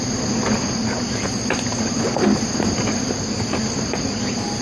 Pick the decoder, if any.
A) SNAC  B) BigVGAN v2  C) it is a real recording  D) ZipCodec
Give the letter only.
C